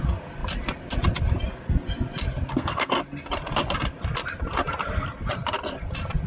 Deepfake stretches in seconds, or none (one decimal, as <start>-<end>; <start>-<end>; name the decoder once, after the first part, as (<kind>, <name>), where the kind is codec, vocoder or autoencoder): 2.5-3.0 (codec, SNAC)